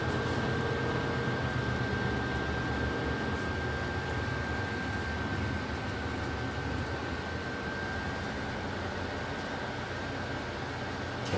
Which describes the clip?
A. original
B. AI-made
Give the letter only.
A